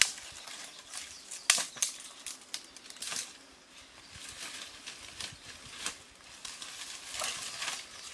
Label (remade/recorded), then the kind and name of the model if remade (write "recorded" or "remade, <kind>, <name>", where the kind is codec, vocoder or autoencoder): recorded